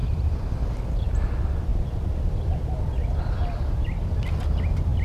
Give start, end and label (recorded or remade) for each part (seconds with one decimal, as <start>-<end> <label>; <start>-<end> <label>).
0.0-0.5 remade; 0.5-5.0 recorded